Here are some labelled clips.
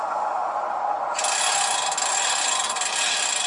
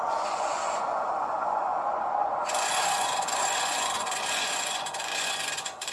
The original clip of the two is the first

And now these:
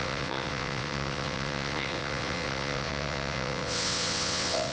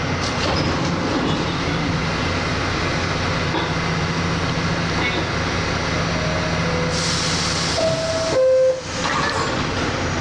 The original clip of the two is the second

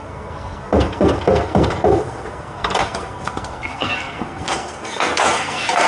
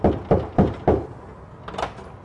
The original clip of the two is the second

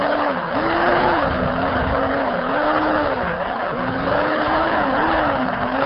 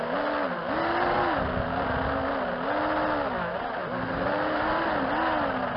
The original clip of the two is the second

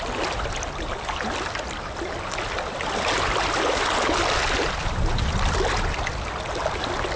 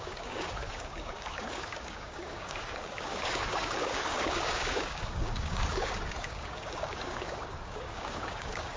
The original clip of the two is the first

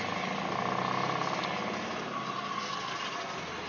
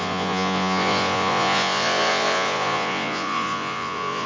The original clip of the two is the first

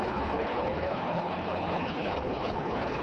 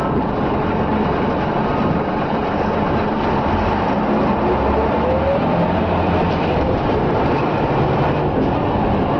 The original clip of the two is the second